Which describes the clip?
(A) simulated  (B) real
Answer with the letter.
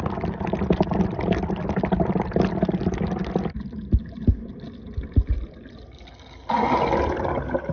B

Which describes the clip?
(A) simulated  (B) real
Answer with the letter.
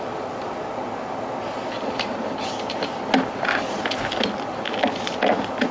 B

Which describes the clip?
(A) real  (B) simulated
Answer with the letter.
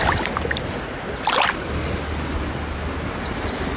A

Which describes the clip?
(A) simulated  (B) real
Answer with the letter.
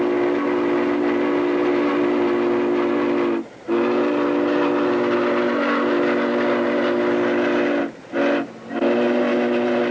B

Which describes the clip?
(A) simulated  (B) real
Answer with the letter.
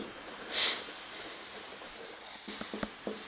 B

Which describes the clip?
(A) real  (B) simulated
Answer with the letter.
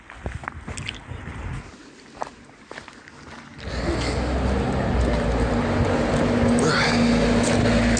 A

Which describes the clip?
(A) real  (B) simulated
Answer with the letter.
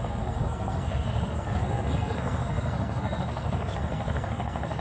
B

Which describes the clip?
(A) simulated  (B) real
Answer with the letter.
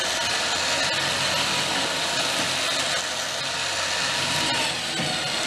B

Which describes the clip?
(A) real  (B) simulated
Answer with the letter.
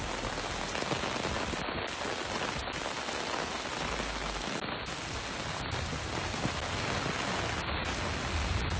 A